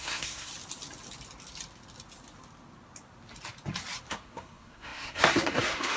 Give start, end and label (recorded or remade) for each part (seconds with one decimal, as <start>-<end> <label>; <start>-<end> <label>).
0.0-0.5 remade; 0.5-4.1 recorded; 4.1-6.0 remade